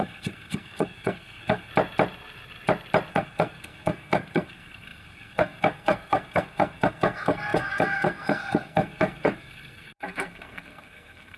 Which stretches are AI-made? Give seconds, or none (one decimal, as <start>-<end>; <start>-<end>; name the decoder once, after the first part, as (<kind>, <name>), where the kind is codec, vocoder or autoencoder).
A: 0.0-1.7 (codec, SNAC); 3.1-11.4